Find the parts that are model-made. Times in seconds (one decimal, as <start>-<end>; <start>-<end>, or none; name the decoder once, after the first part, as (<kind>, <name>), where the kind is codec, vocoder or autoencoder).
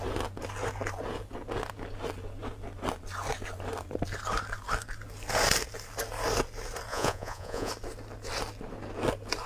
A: 6.9-7.7 (vocoder, Vocos)